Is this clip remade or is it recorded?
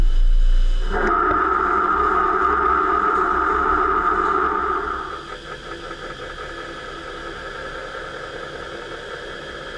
recorded